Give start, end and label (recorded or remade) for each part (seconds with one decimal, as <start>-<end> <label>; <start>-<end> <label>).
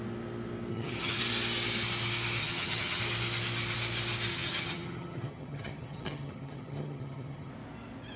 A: 0.0-0.7 recorded; 0.7-1.2 remade; 1.2-2.4 recorded; 2.4-3.0 remade; 3.0-4.3 recorded; 4.3-7.5 remade; 7.5-8.2 recorded